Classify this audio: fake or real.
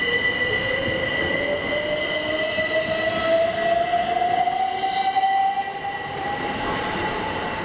real